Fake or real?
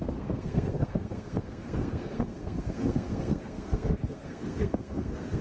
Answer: fake